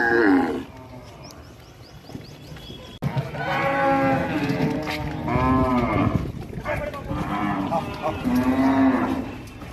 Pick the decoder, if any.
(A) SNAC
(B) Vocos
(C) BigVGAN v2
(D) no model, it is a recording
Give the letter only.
D